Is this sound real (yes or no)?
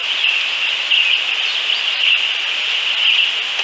yes